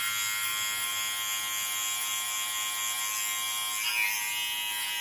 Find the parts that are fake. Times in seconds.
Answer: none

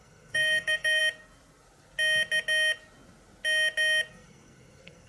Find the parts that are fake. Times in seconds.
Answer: 0.0-1.0 (codec, SNAC); 4.1-5.1

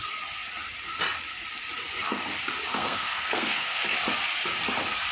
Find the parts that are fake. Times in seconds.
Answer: 2.7-3.8 (codec, SNAC)

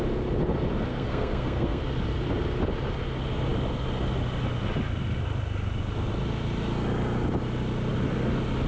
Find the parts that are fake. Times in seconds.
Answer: 0.9-1.8 (codec, SNAC)